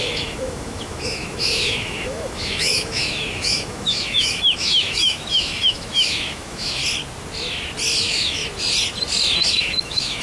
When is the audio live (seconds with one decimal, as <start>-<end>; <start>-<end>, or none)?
6.8-8.0; 8.4-9.5

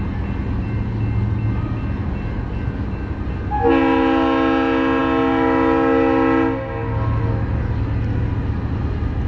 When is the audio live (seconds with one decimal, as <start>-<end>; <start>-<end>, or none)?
0.0-9.3

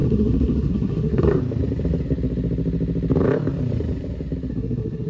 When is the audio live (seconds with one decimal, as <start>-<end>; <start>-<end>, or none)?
1.4-4.5